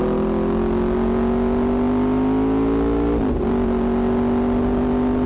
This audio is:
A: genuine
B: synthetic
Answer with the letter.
A